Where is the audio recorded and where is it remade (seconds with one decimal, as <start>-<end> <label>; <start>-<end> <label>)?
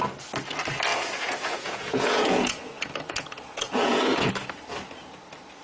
0.0-0.9 recorded; 0.9-4.3 remade; 4.3-5.6 recorded